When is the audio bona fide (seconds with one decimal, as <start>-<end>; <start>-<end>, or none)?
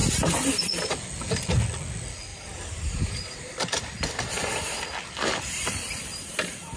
0.0-2.3; 4.8-6.8